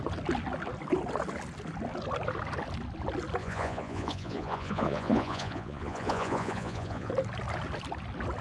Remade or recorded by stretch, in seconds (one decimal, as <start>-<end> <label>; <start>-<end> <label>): 0.0-3.4 recorded; 3.4-7.1 remade; 7.1-8.4 recorded